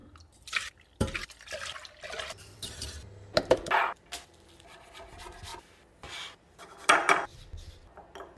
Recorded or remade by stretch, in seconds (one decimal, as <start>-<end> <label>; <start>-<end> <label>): 0.0-2.8 remade; 2.8-8.4 recorded